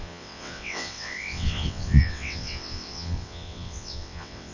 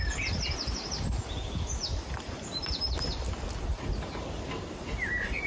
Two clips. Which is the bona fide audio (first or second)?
second